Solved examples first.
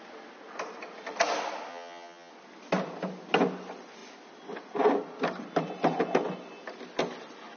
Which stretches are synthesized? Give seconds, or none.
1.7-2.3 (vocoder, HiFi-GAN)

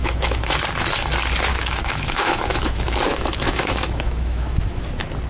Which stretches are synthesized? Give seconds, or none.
0.0-0.5 (autoencoder, DAC-VAE); 1.5-4.6

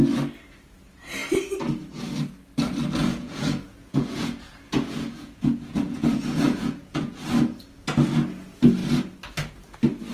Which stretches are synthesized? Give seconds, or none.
3.0-7.2 (vocoder, Vocos)

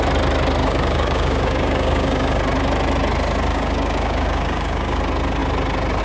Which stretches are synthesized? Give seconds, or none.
0.6-2.4 (codec, DAC); 3.5-5.0